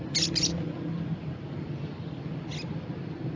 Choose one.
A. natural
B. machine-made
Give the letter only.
A